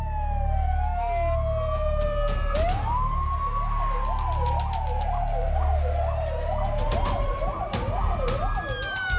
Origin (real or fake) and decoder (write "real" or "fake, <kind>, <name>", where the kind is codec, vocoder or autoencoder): real